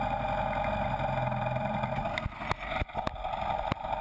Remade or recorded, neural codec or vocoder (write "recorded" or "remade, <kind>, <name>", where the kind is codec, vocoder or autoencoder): recorded